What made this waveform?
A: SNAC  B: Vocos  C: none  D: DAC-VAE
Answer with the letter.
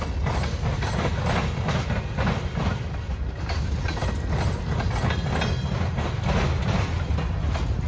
C